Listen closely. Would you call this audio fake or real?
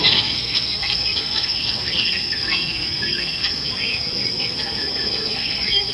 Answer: fake